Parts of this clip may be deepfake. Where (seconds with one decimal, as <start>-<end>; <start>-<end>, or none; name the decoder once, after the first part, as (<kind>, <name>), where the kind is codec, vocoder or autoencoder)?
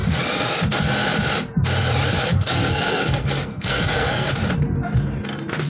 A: 2.1-4.3 (codec, SNAC)